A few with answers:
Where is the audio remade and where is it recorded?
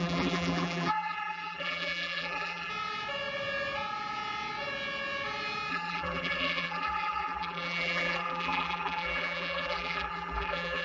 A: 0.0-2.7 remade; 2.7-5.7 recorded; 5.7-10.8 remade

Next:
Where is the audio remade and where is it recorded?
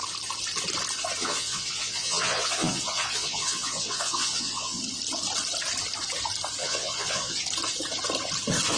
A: 0.0-1.2 recorded; 1.2-4.8 remade; 4.8-6.6 recorded; 6.6-7.4 remade; 7.4-8.8 recorded